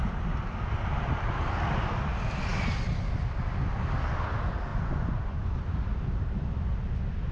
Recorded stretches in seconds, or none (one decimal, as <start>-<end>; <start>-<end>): 0.0-4.7; 5.6-7.3